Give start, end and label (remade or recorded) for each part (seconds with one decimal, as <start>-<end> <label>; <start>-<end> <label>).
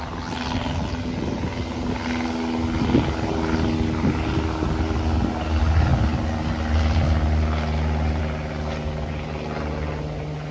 0.0-10.5 recorded